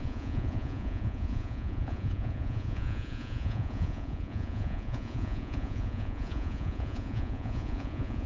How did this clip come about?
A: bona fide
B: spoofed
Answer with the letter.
B